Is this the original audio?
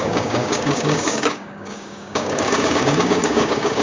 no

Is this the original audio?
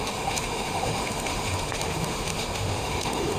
no